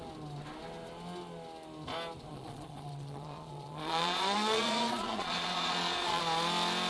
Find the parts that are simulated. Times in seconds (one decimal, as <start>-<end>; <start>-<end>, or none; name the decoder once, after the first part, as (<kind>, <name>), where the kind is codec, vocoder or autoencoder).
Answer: 2.3-6.2 (vocoder, Vocos)